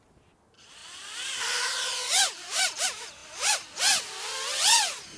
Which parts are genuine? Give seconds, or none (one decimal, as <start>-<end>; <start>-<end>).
0.0-5.2